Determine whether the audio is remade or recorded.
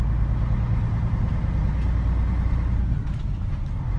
recorded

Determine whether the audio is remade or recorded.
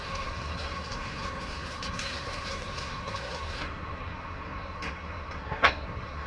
remade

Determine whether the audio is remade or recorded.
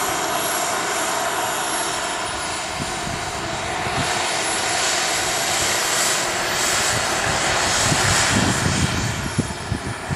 recorded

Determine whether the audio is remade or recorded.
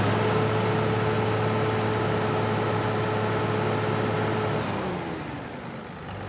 recorded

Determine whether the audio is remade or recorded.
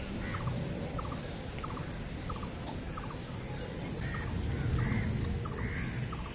recorded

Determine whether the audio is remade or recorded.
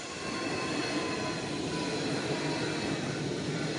recorded